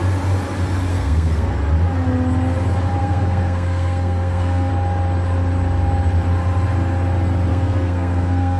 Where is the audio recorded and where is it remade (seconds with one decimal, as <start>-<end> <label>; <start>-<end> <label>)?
0.0-0.9 recorded; 0.9-1.5 remade; 1.5-3.0 recorded; 3.0-4.7 remade; 4.7-7.5 recorded; 7.5-8.6 remade

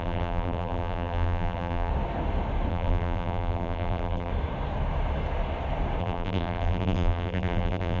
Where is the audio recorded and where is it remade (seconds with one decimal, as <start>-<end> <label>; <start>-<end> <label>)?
0.0-1.9 remade; 1.9-2.7 recorded; 2.7-4.3 remade; 4.3-6.0 recorded; 6.0-8.0 remade

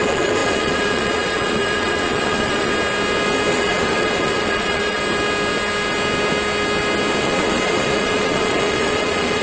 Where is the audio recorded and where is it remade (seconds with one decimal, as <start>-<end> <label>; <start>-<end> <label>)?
0.0-2.7 remade; 2.7-3.5 recorded; 3.5-5.0 remade; 5.0-7.2 recorded; 7.2-9.4 remade

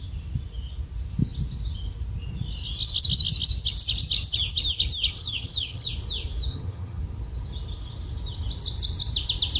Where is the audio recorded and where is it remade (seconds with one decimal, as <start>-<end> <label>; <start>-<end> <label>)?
0.0-5.2 recorded; 5.2-5.9 remade; 5.9-6.5 recorded; 6.5-7.0 remade; 7.0-9.6 recorded

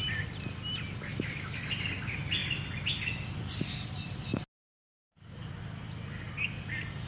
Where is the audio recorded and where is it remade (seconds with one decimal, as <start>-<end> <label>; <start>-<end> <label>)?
0.0-1.1 recorded; 1.1-1.6 remade; 1.6-7.1 recorded

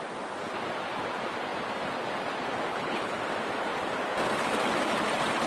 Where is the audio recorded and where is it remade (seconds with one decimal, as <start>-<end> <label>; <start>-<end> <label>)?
0.0-2.7 recorded; 2.7-3.2 remade; 3.2-5.5 recorded

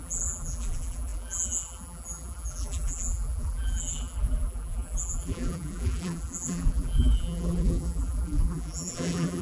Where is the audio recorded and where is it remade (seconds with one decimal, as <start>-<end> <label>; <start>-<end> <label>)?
0.0-9.4 remade